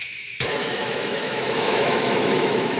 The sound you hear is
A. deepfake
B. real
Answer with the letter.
A